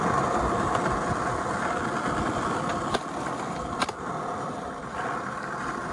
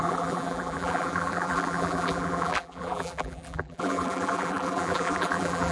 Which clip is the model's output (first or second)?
second